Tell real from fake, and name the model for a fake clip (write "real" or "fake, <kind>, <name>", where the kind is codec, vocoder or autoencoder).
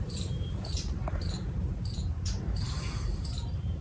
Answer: fake, vocoder, BigVGAN v2